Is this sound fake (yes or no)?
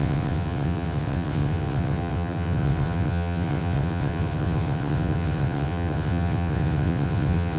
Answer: yes